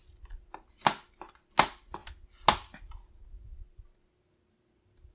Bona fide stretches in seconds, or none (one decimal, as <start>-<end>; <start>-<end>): 0.0-5.1

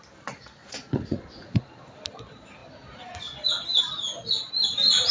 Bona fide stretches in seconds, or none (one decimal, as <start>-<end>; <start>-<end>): 0.0-0.6; 1.8-5.1

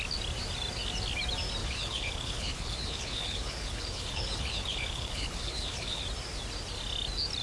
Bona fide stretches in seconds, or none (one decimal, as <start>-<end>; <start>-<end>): 0.0-1.6; 6.0-7.4